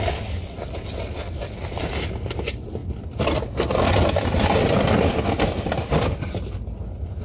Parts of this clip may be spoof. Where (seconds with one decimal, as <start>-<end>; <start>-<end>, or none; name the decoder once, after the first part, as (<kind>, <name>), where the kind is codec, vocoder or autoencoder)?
none